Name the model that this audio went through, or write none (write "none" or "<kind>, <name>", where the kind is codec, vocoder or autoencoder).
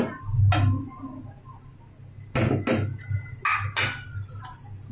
none